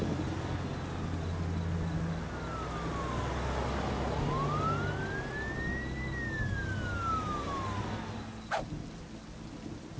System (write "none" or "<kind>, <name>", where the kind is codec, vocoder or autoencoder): none